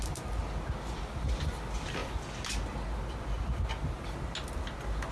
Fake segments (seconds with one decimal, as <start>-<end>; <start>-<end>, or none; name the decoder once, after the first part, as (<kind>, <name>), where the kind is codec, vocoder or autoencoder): none